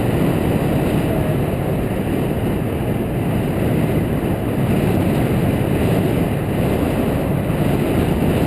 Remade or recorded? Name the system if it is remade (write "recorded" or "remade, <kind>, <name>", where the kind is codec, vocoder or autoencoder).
recorded